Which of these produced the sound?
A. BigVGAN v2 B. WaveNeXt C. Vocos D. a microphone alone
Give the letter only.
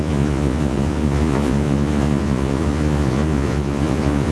C